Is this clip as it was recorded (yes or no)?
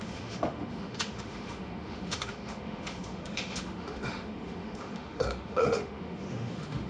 no